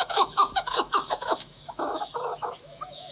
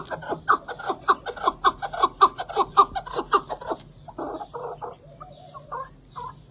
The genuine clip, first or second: second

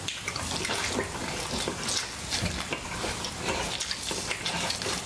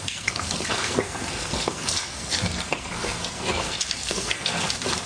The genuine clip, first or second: first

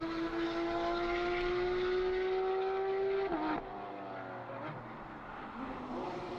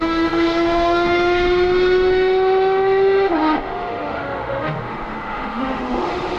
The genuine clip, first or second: first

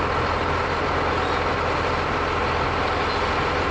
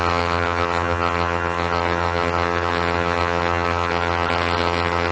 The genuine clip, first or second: first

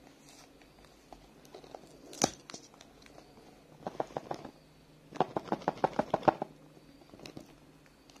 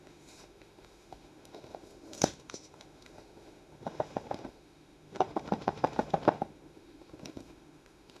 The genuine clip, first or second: first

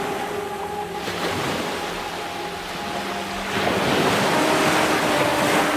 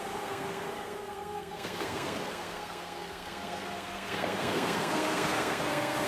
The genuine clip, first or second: first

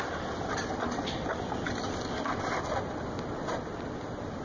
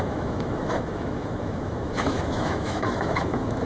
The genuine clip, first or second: first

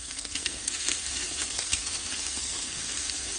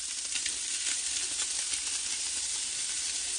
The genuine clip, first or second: second